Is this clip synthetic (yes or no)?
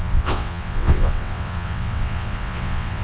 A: yes